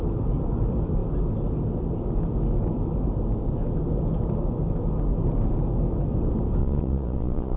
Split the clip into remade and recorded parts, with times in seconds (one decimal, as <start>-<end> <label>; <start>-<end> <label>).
0.0-6.6 recorded; 6.6-7.6 remade